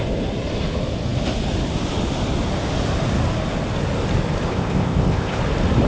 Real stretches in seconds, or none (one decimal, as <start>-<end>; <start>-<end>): 0.0-4.5; 5.4-5.9